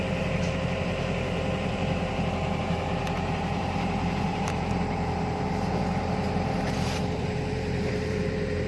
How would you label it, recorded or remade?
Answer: remade